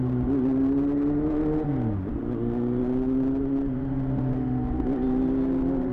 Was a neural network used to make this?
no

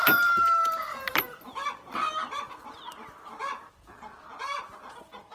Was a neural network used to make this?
yes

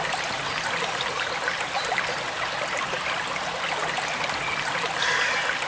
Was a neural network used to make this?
no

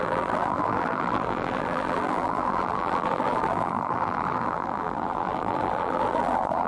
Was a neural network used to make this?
yes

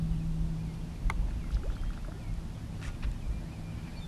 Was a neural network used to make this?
no